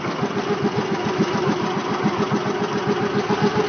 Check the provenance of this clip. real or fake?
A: real